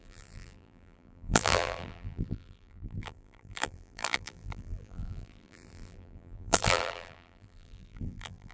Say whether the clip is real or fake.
fake